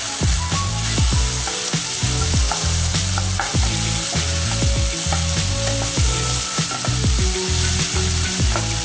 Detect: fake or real real